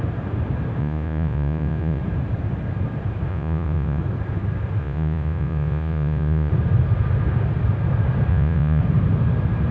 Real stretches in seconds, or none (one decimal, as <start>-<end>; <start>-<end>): 0.0-0.8; 2.0-3.3; 4.0-4.8; 6.5-8.3; 8.8-9.7